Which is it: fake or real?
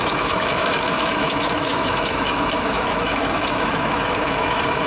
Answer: fake